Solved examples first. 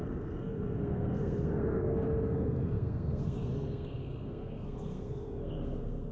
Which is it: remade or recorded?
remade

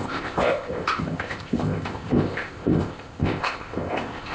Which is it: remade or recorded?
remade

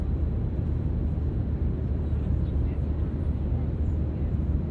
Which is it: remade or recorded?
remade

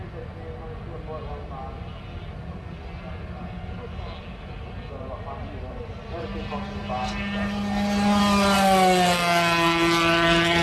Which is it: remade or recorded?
recorded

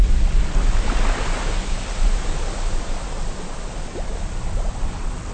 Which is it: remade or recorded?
recorded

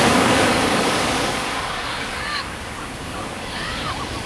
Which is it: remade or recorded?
remade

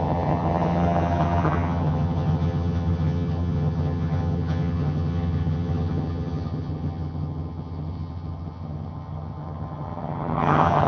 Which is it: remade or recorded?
remade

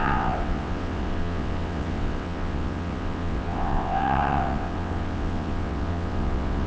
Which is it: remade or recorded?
remade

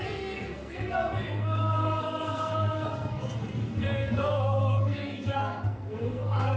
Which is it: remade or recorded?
remade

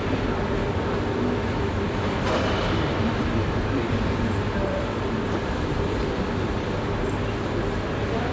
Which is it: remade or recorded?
remade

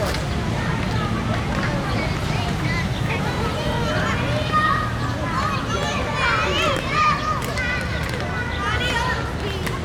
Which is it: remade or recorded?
recorded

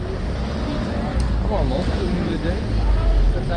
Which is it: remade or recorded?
recorded